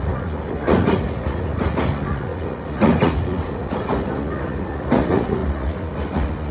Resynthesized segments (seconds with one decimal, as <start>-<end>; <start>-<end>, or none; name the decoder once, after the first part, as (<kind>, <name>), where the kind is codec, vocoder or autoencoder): 0.0-6.5 (vocoder, Vocos)